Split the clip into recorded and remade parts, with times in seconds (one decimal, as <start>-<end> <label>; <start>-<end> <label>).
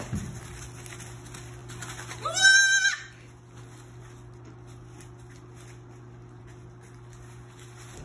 0.0-8.0 recorded